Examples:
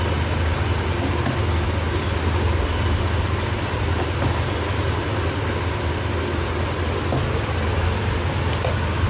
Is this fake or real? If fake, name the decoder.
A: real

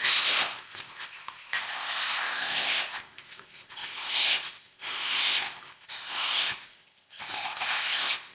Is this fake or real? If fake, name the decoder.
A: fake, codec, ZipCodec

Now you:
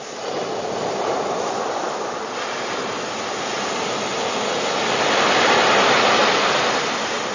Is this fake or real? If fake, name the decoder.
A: real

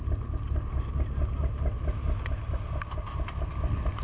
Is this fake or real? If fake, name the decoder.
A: real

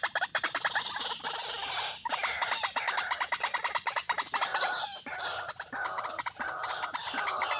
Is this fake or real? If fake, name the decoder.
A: real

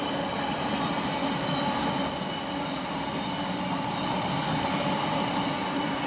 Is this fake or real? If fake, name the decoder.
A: real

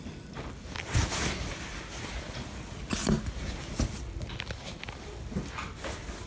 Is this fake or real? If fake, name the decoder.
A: real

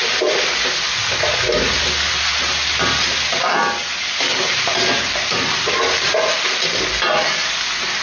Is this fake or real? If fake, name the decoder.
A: real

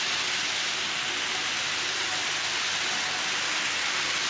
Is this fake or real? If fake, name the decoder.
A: real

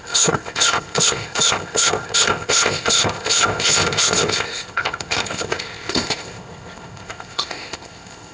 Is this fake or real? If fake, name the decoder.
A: fake, codec, ZipCodec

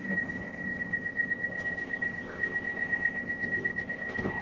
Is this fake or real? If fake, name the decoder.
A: fake, codec, ZipCodec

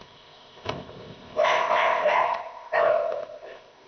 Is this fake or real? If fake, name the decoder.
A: fake, codec, ZipCodec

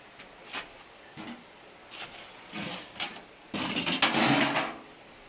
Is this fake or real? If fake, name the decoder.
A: real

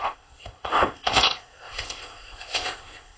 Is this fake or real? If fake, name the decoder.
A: fake, codec, ZipCodec